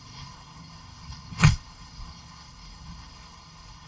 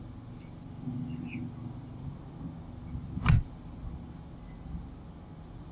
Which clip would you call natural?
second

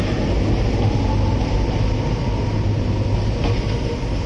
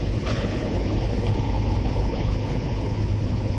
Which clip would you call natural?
first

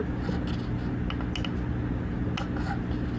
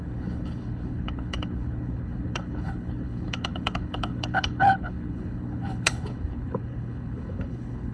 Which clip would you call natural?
first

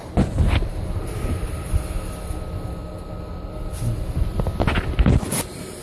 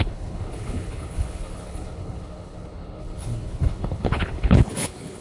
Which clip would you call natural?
first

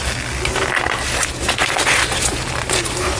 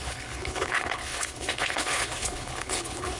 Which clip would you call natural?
first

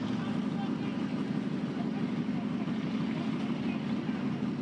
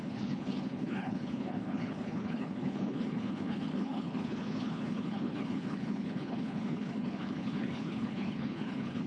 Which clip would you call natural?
first